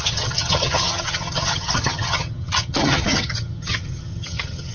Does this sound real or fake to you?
fake